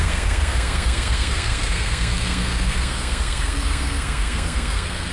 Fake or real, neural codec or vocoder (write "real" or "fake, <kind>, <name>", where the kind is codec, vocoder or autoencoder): fake, codec, SNAC